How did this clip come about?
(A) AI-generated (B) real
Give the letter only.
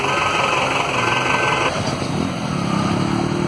B